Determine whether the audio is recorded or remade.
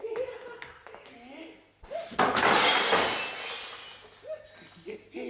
recorded